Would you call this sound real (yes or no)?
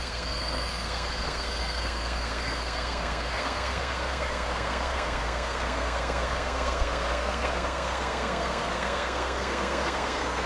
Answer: no